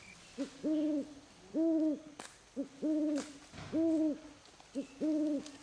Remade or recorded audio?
recorded